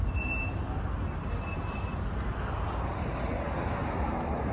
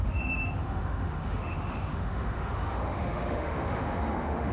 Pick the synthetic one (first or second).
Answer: second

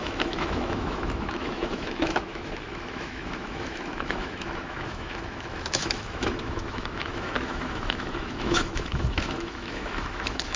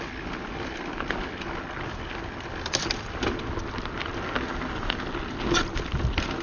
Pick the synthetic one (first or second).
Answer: first